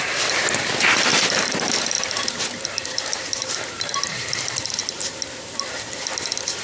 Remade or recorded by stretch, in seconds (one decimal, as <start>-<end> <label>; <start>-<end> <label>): 0.0-1.1 recorded; 1.1-4.3 remade; 4.3-6.6 recorded